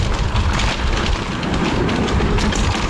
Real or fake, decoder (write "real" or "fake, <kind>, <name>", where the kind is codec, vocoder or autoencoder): fake, vocoder, BigVGAN v2